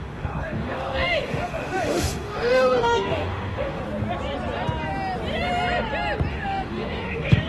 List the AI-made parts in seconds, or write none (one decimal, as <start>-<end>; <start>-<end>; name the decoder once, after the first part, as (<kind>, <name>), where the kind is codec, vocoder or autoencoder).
0.0-3.8 (autoencoder, DAC-VAE); 6.3-7.5